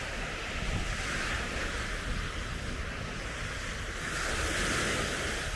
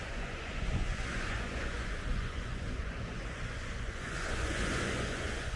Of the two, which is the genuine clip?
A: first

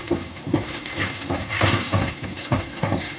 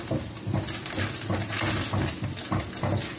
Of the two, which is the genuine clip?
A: second